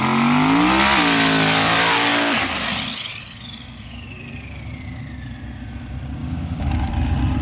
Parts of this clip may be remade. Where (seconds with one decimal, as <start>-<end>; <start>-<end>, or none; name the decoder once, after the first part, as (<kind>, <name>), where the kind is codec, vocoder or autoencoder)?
6.2-6.9 (codec, DAC)